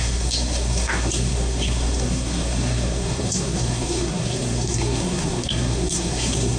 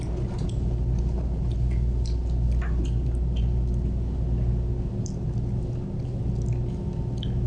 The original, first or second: second